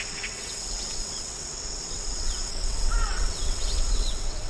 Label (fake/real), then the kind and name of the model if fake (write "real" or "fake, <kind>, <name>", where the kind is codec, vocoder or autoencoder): fake, vocoder, WaveNeXt